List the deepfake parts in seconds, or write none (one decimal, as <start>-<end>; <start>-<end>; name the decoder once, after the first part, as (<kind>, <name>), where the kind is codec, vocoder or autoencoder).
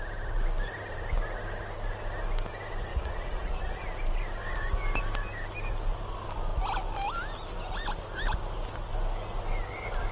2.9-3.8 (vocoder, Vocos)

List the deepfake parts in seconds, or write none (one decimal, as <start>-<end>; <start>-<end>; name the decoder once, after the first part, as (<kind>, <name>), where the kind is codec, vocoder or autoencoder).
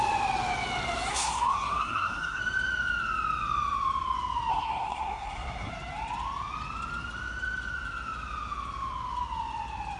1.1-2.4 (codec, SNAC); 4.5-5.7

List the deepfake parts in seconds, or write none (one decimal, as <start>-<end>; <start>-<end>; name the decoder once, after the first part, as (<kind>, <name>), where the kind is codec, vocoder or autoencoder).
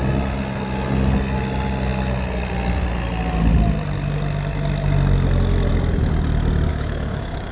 6.7-7.5 (codec, DAC)